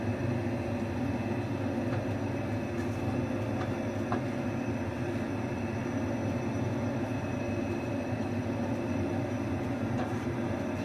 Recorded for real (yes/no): yes